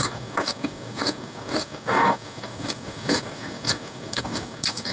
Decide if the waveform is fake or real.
fake